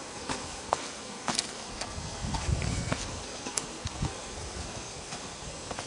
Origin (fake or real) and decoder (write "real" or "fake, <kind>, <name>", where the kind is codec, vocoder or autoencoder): fake, codec, SNAC